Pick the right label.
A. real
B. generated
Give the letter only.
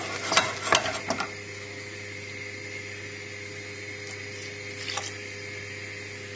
A